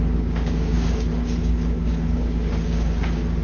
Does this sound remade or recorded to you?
remade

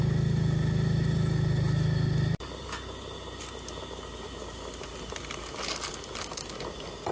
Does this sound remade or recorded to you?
recorded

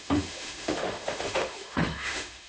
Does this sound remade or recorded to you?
remade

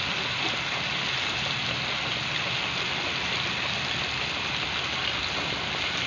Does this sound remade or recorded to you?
recorded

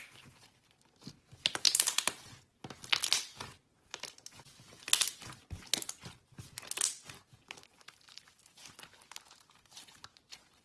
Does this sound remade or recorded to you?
recorded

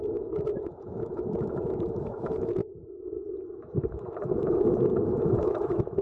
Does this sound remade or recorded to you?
remade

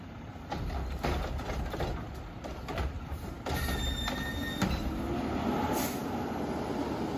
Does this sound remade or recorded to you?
recorded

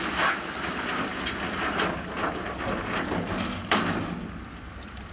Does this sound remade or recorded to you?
recorded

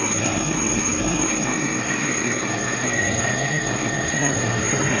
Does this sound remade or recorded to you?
remade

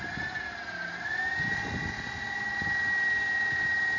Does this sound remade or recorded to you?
recorded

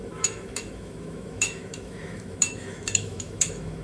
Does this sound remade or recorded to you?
remade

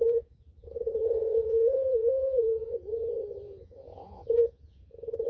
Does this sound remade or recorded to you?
remade